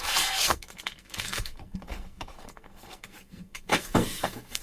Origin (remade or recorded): remade